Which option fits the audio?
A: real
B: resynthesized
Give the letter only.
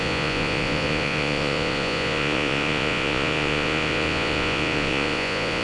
B